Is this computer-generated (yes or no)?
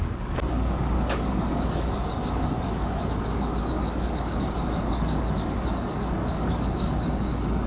yes